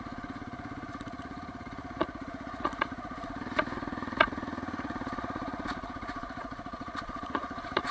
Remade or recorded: remade